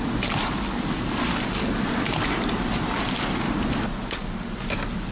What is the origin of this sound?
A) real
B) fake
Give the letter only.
A